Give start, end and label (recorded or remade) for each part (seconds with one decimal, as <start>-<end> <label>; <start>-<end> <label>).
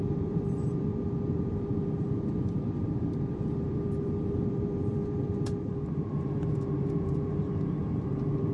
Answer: 0.0-8.5 remade